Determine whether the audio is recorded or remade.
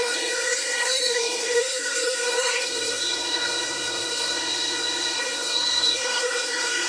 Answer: remade